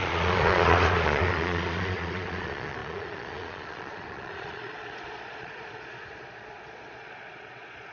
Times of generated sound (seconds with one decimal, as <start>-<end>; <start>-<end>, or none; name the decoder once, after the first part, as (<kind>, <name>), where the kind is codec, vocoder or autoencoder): 0.0-7.9 (vocoder, Vocos)